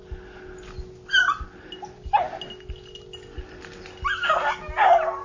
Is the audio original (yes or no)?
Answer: yes